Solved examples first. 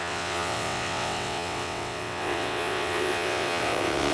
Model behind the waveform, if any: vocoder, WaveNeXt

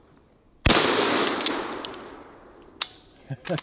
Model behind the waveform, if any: none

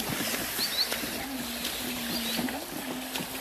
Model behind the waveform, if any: none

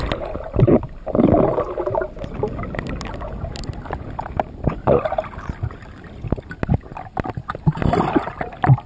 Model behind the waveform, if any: none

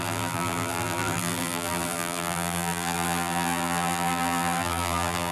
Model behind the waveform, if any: vocoder, BigVGAN v2